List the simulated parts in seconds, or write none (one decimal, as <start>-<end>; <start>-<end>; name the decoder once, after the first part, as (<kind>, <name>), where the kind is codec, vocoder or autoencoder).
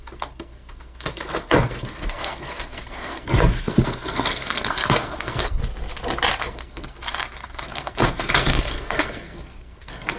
0.0-5.6 (codec, SNAC); 6.4-10.2